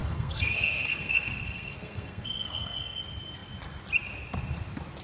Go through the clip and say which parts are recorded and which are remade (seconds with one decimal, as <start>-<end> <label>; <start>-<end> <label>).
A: 0.0-3.0 remade; 3.0-5.0 recorded